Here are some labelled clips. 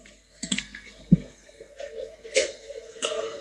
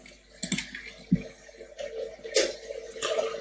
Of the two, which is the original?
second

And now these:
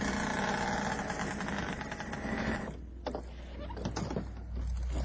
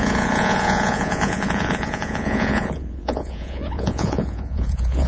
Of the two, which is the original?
first